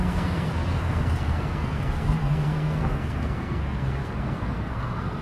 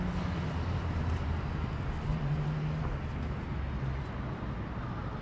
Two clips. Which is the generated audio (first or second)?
first